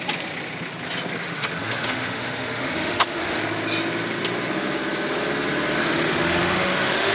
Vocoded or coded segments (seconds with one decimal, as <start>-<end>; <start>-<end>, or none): 1.2-3.4; 5.8-7.1